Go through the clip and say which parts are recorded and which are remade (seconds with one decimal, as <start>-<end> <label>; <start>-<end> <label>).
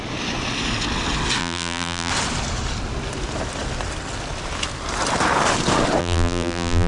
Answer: 0.0-1.4 recorded; 1.4-2.1 remade; 2.1-6.0 recorded; 6.0-6.9 remade